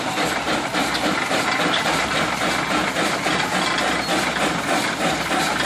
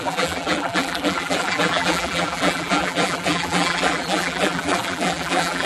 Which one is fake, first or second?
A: second